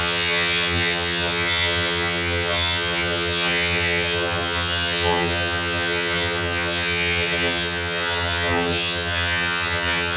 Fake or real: fake